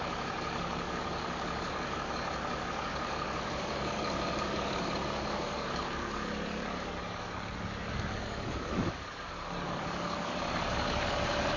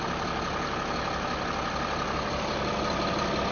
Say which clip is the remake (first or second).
first